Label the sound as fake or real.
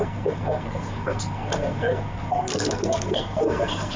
fake